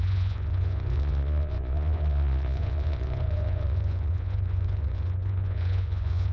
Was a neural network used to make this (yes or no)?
yes